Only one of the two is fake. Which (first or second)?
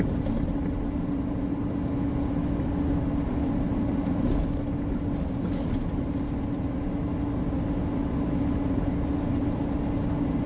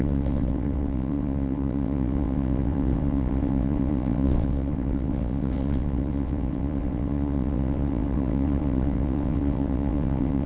second